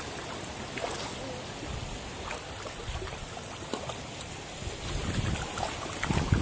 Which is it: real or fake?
real